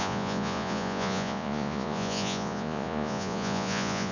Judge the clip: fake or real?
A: fake